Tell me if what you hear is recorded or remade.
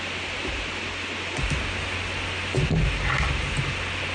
recorded